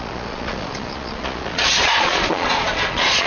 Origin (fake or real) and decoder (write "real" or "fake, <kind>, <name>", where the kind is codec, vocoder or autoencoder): fake, vocoder, Vocos